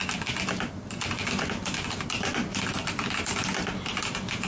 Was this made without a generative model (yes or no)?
yes